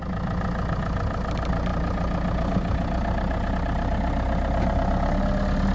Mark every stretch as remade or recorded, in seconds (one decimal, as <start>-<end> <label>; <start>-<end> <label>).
0.0-5.7 recorded